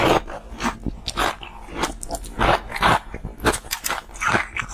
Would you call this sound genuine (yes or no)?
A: yes